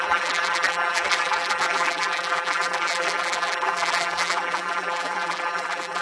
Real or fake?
fake